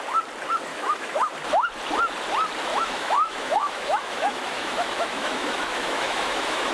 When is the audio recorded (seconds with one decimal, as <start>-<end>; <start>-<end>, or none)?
0.0-0.7; 1.3-2.7